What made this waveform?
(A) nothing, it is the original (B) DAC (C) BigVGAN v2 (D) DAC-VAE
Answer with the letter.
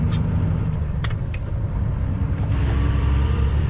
C